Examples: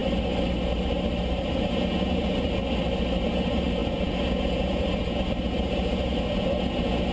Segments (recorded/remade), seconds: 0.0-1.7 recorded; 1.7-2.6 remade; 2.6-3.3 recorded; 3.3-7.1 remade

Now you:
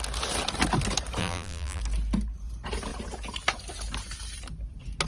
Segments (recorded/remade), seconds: 0.0-1.2 recorded; 1.2-1.8 remade; 1.8-5.1 recorded

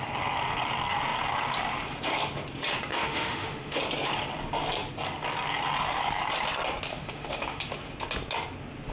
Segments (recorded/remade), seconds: 0.0-2.9 recorded; 2.9-3.8 remade; 3.8-6.9 recorded; 6.9-7.6 remade; 7.6-8.9 recorded